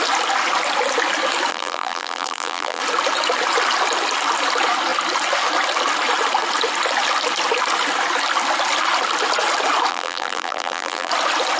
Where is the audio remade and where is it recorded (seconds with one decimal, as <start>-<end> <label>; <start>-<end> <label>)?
0.0-1.5 recorded; 1.5-2.8 remade; 2.8-9.9 recorded; 9.9-11.1 remade; 11.1-11.6 recorded